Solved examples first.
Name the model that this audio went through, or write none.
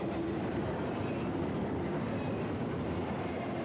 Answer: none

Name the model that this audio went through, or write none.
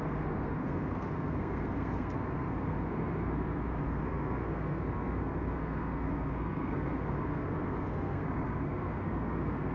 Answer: codec, SNAC